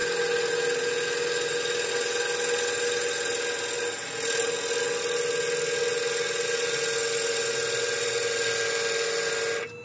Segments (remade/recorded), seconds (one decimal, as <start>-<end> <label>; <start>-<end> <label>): 0.0-9.8 recorded